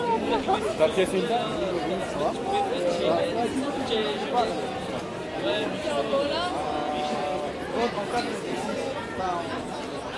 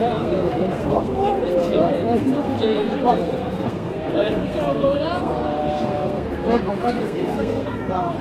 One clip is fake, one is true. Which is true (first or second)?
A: first